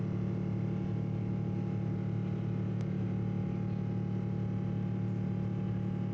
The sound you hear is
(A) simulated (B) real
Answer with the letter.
B